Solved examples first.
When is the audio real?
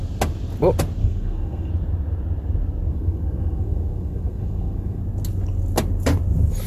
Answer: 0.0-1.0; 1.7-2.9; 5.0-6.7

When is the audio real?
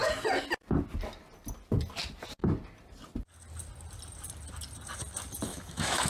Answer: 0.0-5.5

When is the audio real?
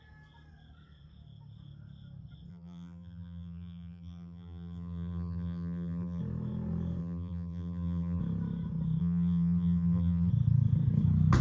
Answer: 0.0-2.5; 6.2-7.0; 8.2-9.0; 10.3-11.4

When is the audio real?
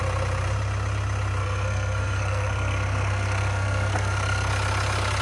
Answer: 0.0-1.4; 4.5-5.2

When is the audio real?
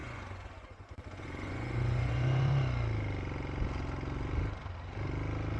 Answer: 2.5-5.6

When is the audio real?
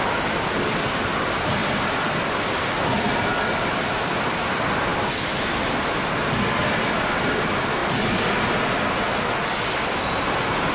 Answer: 0.0-10.7